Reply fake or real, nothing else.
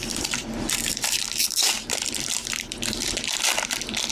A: fake